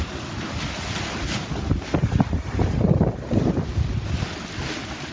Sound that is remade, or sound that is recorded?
recorded